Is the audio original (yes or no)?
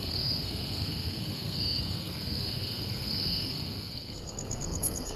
no